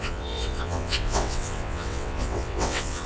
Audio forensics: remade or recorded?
remade